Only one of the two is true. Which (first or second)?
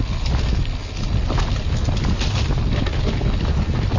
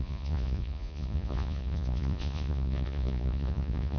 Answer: first